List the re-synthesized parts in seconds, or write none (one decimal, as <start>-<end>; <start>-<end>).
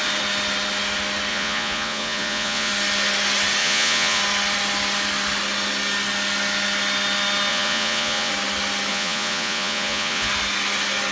1.3-2.7; 3.6-4.2; 7.5-8.3; 8.9-10.3